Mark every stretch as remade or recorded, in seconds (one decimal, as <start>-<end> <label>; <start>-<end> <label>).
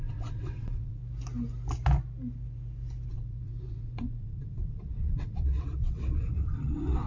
0.0-1.0 remade; 1.0-3.1 recorded; 3.1-7.1 remade